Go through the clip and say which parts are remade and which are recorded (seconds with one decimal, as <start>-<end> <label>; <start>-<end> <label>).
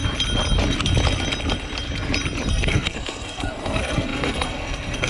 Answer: 0.0-2.5 recorded; 2.5-5.1 remade